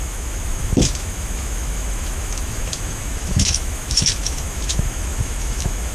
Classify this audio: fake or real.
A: fake